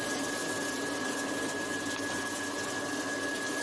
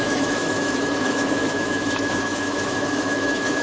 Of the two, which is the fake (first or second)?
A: second